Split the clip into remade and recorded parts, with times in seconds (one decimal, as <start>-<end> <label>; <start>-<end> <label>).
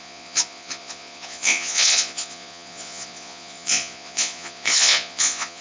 0.0-5.6 remade